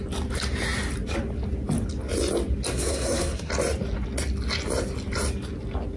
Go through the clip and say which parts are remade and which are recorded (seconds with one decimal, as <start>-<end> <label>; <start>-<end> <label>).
0.0-2.7 recorded; 2.7-3.5 remade; 3.5-6.0 recorded